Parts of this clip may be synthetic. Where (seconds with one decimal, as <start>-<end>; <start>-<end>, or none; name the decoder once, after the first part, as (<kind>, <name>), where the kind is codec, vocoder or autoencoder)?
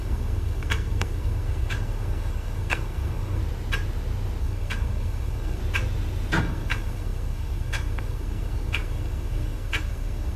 0.0-3.4 (codec, SNAC); 4.4-5.6; 6.4-10.4